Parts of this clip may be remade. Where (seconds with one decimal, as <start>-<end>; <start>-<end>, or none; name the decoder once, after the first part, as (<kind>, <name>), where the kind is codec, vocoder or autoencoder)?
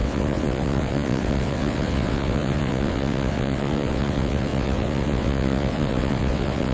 0.0-6.7 (vocoder, WaveNeXt)